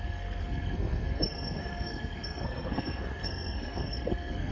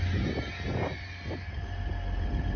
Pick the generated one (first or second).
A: first